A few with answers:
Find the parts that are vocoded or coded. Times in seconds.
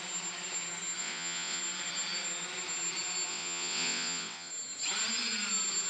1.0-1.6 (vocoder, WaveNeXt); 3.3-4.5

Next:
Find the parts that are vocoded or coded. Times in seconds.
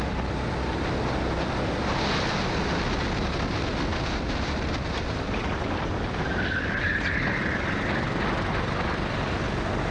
none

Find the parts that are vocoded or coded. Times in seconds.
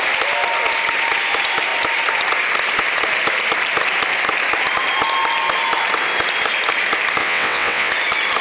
7.2-7.9 (vocoder, WaveNeXt)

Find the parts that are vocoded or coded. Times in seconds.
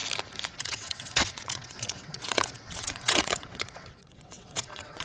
0.5-5.0 (vocoder, WaveNeXt)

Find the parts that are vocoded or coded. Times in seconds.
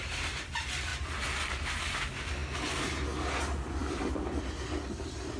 none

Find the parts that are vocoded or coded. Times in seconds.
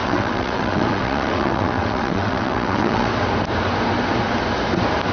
0.0-3.1 (vocoder, WaveNeXt)